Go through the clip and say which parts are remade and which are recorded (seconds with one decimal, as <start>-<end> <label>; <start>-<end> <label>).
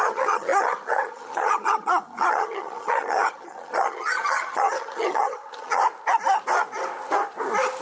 0.0-5.8 remade; 5.8-7.8 recorded